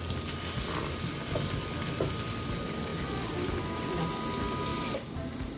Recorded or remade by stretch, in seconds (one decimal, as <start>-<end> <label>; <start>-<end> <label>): 0.0-4.7 recorded; 4.7-5.6 remade